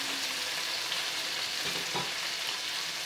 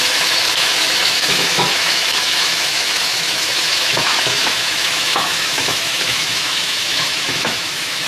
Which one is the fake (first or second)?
second